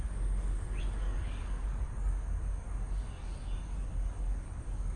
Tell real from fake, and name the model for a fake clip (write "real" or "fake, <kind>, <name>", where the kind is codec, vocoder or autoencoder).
fake, codec, DAC